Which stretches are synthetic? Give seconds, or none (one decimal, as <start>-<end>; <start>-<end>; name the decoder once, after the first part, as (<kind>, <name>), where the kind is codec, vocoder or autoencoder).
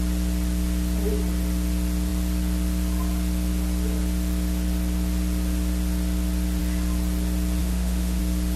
7.6-8.2 (autoencoder, DAC-VAE)